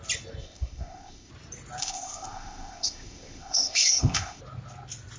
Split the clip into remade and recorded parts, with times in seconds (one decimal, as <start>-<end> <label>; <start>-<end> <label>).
0.0-0.4 recorded; 0.4-1.3 remade; 1.3-1.8 recorded; 1.8-4.4 remade; 4.4-5.2 recorded